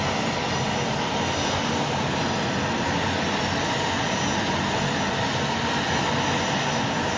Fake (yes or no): no